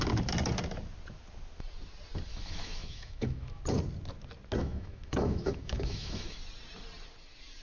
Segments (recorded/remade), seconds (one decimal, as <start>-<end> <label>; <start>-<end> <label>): 0.0-2.3 recorded; 2.3-3.6 remade; 3.6-4.6 recorded; 4.6-6.4 remade; 6.4-7.6 recorded